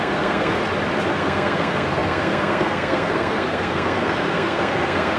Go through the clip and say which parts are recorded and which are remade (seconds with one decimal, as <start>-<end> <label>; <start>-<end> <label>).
0.0-0.6 remade; 0.6-1.1 recorded; 1.1-5.2 remade

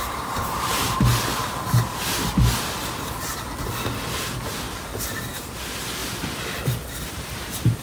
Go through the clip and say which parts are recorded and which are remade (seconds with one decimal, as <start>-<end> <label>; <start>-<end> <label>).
0.0-1.1 remade; 1.1-5.3 recorded; 5.3-6.0 remade; 6.0-7.1 recorded; 7.1-7.8 remade

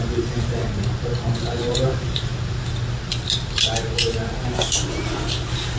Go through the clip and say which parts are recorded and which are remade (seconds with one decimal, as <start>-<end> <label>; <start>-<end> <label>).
0.0-0.6 remade; 0.6-1.5 recorded; 1.5-2.3 remade; 2.3-5.8 recorded